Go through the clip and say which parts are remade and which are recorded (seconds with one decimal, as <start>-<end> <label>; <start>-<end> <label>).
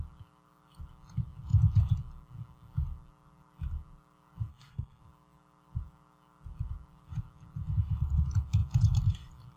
0.0-4.5 recorded; 4.5-5.0 remade; 5.0-9.6 recorded